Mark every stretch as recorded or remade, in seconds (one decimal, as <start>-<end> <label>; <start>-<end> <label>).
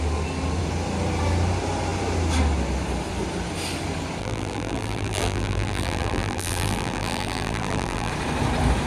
0.0-4.2 recorded; 4.2-8.1 remade; 8.1-8.9 recorded